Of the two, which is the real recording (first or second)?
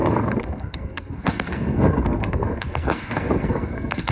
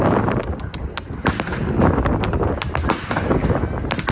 second